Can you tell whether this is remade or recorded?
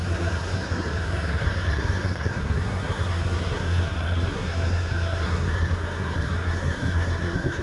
remade